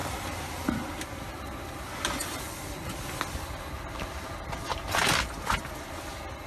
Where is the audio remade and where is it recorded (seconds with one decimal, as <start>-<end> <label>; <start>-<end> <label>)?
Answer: 0.0-3.2 remade; 3.2-6.5 recorded